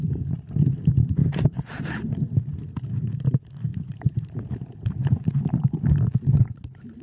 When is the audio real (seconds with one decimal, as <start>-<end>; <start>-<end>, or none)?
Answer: 0.0-1.2; 2.1-3.7; 5.8-7.0

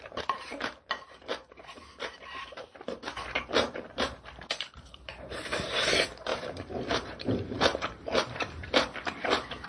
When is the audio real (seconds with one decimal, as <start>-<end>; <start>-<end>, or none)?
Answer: none

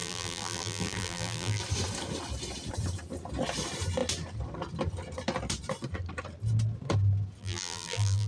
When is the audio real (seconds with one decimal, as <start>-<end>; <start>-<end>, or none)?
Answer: 1.6-7.4

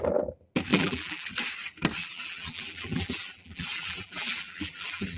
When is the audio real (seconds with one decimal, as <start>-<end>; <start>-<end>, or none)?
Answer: 0.0-0.7; 1.3-2.0

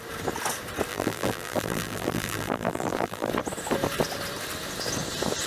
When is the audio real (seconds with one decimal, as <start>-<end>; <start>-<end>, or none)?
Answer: 0.0-0.9; 3.3-5.5

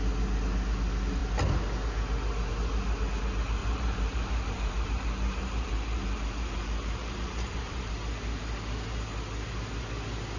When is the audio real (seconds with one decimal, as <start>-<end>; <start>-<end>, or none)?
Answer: 0.0-3.6; 7.9-10.4

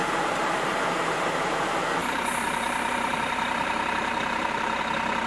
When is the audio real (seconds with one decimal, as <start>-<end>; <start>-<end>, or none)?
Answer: 0.7-2.0; 4.8-5.3

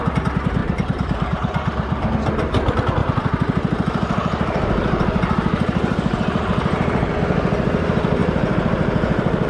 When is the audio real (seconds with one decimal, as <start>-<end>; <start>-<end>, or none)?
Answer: 0.0-0.6; 2.1-3.0; 7.1-8.2